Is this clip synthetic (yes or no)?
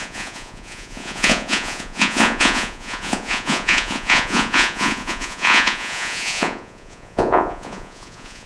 yes